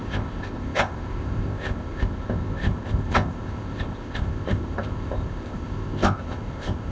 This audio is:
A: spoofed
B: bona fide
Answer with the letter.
A